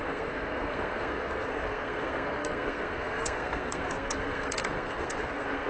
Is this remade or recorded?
remade